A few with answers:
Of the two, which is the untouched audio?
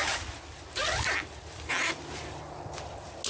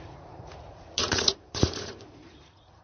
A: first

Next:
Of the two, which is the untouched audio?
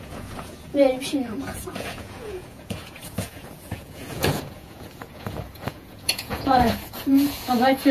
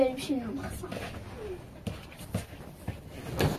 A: second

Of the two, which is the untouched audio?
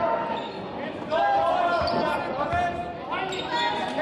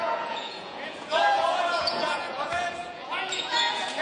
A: first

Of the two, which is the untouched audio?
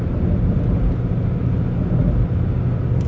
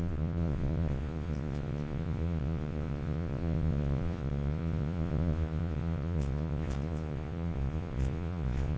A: first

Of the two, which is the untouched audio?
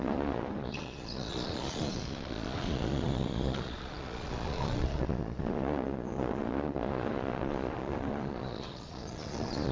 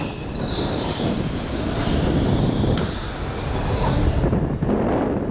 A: second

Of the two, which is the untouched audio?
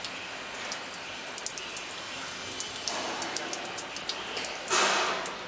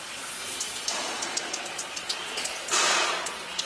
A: first